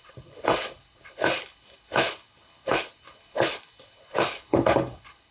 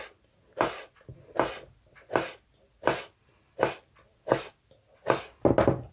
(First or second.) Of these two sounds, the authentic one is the second